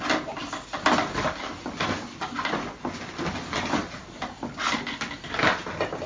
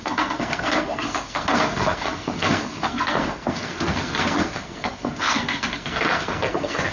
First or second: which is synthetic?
second